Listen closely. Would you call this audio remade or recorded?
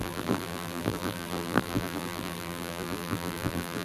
remade